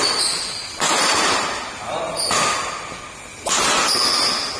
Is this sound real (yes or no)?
yes